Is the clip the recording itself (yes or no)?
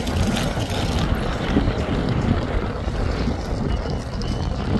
yes